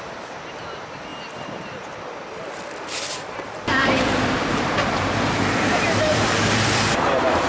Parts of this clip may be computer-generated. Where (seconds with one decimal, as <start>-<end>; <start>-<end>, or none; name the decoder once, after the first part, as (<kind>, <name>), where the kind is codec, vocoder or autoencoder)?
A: 0.0-1.1 (vocoder, BigVGAN v2); 2.4-7.5